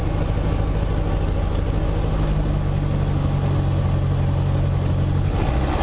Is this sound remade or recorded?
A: recorded